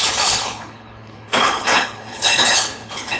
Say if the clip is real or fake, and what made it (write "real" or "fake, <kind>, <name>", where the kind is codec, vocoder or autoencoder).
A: fake, codec, HILCodec